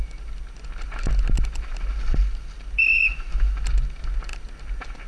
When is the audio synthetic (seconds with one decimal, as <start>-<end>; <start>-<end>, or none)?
none